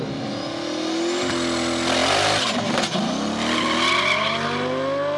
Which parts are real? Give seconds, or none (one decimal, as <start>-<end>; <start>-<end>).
0.0-5.2